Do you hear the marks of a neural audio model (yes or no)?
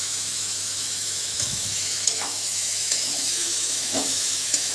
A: yes